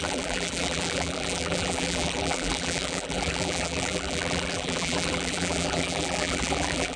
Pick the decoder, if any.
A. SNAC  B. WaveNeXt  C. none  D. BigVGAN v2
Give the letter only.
D